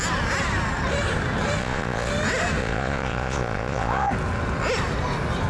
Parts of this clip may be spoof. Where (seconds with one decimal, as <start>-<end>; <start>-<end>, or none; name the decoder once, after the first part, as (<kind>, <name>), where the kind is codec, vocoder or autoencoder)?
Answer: 1.6-2.1 (vocoder, Vocos); 2.6-4.1